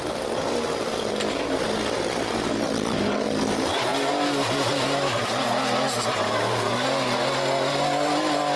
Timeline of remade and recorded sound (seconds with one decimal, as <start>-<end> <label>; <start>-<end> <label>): 0.0-8.6 recorded